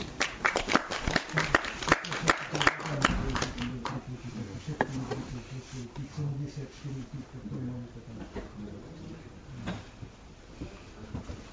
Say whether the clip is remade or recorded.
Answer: recorded